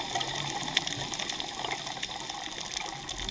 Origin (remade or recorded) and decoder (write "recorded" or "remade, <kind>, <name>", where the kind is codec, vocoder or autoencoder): recorded